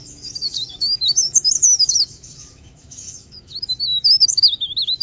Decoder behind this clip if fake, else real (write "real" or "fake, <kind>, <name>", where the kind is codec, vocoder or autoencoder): fake, autoencoder, DAC-VAE